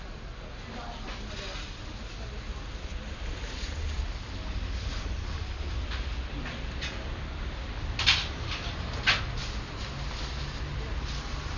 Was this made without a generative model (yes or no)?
yes